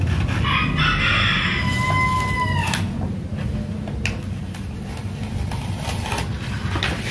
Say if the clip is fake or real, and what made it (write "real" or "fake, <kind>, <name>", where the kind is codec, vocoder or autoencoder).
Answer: real